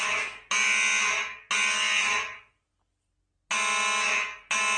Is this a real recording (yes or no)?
yes